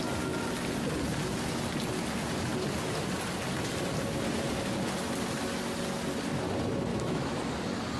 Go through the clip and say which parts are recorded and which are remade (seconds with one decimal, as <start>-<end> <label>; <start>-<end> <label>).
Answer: 0.0-6.9 recorded; 6.9-7.4 remade; 7.4-8.0 recorded